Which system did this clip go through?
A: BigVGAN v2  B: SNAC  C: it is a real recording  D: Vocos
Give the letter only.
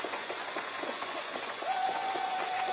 D